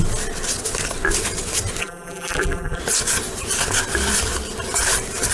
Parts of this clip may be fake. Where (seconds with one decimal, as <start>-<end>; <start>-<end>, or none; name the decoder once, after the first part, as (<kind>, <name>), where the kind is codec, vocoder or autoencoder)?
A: 1.8-2.8 (vocoder, BigVGAN v2)